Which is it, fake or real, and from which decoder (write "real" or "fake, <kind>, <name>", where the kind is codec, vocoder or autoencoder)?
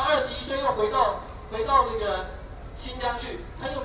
real